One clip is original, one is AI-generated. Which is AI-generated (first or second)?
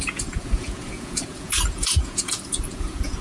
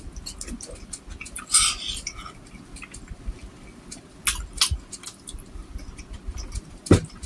first